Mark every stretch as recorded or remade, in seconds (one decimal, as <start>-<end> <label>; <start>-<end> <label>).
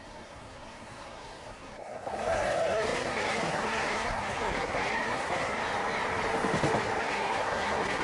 0.0-5.6 remade; 5.6-7.0 recorded; 7.0-8.0 remade